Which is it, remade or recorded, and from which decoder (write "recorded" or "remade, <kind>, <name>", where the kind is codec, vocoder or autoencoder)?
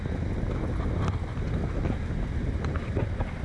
recorded